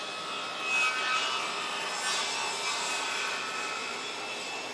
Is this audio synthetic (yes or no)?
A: no